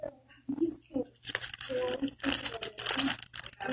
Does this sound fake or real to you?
real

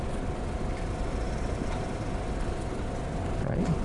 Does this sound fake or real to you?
real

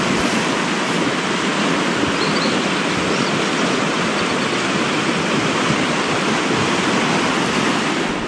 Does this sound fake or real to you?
real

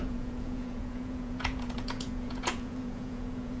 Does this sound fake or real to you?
fake